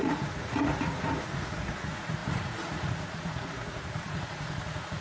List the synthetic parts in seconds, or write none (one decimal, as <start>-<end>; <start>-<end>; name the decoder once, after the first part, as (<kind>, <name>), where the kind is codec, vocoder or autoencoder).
0.0-5.0 (vocoder, Vocos)